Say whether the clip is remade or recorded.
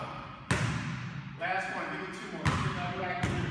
recorded